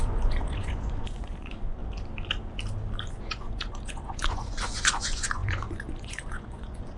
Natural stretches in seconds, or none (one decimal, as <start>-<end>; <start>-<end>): 1.8-3.1

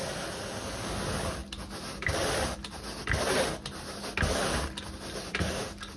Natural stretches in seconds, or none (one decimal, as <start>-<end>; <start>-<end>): 0.0-6.0

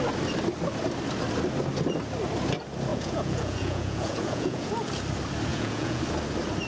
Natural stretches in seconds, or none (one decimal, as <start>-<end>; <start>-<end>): 0.0-2.9; 4.7-5.5; 6.0-6.7

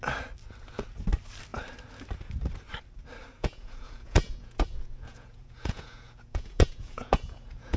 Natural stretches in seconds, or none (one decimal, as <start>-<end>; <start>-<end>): 0.0-3.4